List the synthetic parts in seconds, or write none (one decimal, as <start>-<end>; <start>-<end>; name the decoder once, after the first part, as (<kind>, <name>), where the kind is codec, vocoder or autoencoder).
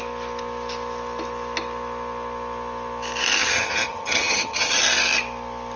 3.4-4.8 (vocoder, HiFi-GAN)